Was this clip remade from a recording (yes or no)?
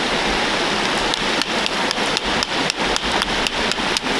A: no